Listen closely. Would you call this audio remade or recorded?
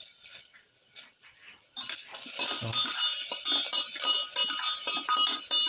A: recorded